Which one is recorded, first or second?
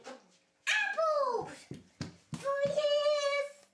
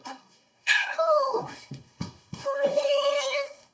first